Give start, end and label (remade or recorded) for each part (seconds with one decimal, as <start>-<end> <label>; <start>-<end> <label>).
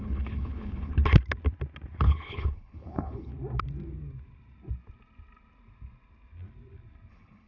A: 0.0-0.9 remade; 0.9-2.0 recorded; 2.0-3.3 remade; 3.3-7.1 recorded; 7.1-7.5 remade